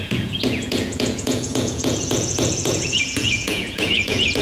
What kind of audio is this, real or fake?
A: fake